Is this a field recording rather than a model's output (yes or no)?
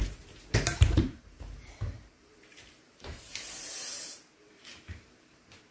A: no